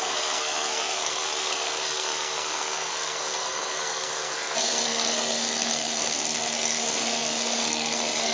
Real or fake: fake